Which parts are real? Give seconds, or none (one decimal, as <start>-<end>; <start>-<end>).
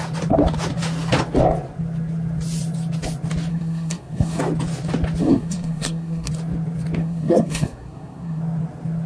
0.0-3.5; 4.4-5.2; 6.3-7.0; 8.4-9.1